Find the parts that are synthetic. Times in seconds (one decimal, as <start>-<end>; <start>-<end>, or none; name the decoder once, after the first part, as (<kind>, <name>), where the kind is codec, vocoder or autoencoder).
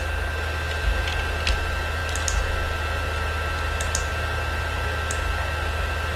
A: none